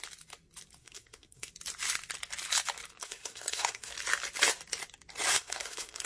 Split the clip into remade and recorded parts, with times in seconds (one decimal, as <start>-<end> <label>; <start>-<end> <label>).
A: 0.0-0.8 recorded; 0.8-1.5 remade; 1.5-3.0 recorded; 3.0-3.9 remade; 3.9-5.3 recorded; 5.3-6.1 remade